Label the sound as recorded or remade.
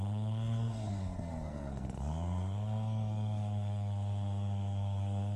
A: remade